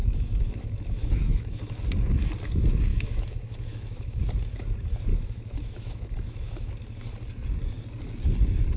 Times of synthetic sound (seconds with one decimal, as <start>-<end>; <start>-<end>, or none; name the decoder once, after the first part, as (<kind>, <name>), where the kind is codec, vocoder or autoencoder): 0.0-1.8 (autoencoder, DAC-VAE); 2.9-4.2; 5.1-6.7